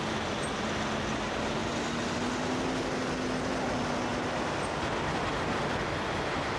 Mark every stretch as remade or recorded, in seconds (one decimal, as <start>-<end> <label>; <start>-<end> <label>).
0.0-6.6 recorded